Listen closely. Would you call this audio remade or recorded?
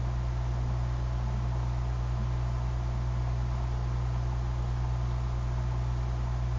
recorded